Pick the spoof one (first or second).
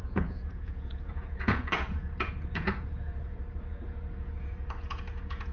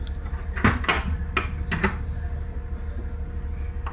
first